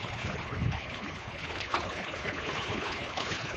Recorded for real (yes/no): no